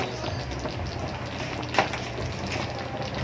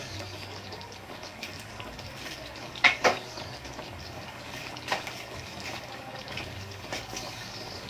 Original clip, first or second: first